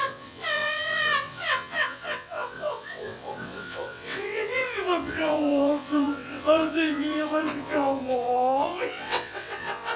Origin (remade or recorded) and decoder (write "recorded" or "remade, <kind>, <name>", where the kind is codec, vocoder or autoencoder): remade, vocoder, WaveNeXt